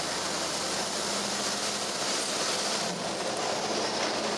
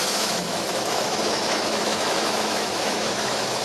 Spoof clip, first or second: second